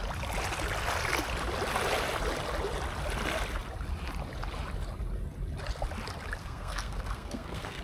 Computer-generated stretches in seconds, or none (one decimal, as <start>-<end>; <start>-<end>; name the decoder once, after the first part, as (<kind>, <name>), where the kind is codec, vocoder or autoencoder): 6.4-7.8 (codec, SNAC)

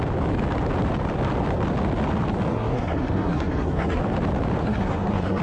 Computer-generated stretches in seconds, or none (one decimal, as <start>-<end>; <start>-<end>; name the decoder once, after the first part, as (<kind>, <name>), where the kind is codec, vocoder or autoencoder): 2.5-4.0 (codec, SNAC); 4.6-5.4

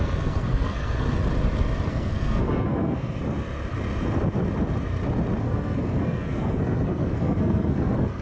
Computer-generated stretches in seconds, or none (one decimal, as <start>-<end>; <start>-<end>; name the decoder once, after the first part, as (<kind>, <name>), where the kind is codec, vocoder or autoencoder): 0.0-1.2 (codec, SNAC); 1.9-3.2; 5.4-8.2